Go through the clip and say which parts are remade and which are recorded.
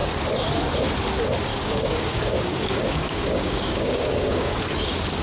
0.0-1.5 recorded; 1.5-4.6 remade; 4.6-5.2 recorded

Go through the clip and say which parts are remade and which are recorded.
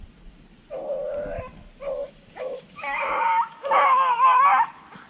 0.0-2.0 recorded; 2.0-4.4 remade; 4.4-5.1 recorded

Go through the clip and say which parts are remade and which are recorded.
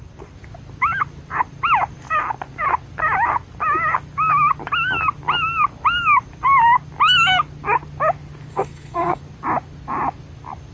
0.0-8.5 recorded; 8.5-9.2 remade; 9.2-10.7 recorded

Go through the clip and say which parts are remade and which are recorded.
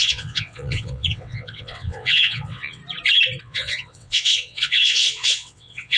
0.0-2.8 remade; 2.8-3.4 recorded; 3.4-6.0 remade